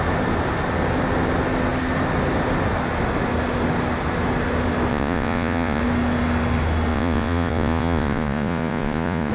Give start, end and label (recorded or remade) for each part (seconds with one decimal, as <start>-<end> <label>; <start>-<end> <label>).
0.0-4.9 recorded; 4.9-5.8 remade; 5.8-6.9 recorded; 6.9-9.3 remade